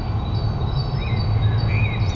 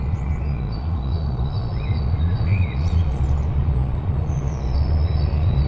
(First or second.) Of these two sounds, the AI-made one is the second